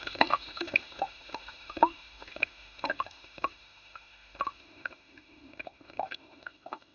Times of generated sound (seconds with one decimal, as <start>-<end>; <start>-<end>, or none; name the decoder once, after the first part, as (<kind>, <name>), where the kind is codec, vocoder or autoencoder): 0.0-6.9 (autoencoder, DAC-VAE)